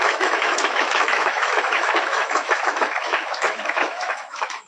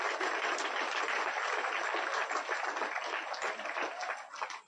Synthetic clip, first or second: first